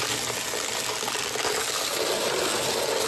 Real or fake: real